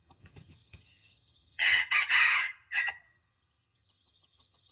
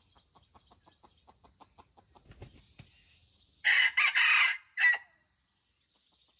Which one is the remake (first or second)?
first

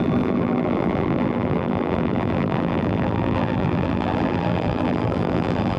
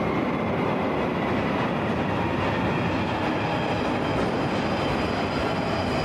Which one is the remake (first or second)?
first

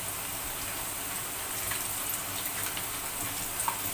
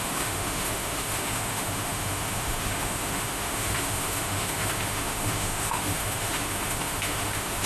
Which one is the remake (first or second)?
second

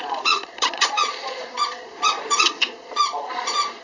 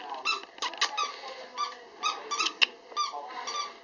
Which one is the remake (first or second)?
first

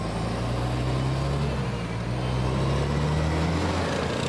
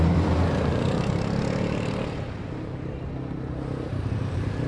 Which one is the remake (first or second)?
second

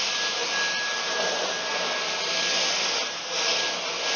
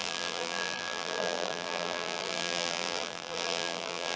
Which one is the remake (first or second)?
second